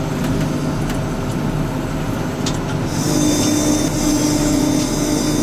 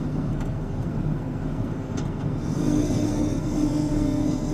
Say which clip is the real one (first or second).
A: first